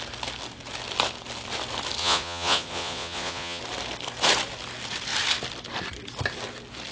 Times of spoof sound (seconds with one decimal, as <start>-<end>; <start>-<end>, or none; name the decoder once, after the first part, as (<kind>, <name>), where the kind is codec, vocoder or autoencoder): 2.0-3.6 (vocoder, Vocos)